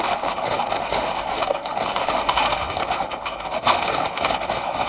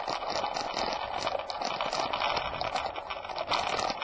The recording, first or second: second